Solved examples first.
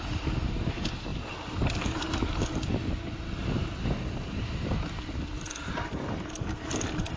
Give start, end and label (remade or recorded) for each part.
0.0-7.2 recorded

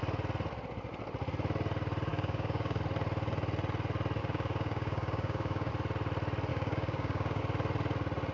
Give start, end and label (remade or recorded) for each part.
0.0-2.1 recorded; 2.1-2.8 remade; 2.8-4.2 recorded; 4.2-5.7 remade; 5.7-6.5 recorded; 6.5-7.4 remade; 7.4-8.3 recorded

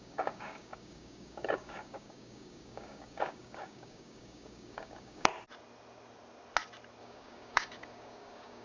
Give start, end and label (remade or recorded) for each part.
0.0-5.3 remade; 5.3-7.0 recorded; 7.0-8.6 remade

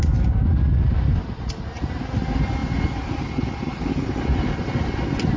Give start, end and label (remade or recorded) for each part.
0.0-5.4 recorded

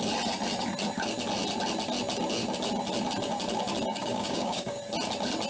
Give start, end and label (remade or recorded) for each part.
0.0-3.9 recorded; 3.9-4.8 remade; 4.8-5.5 recorded

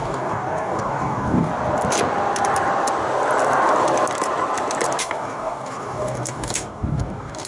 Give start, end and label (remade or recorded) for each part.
0.0-1.5 remade; 1.5-5.0 recorded; 5.0-7.5 remade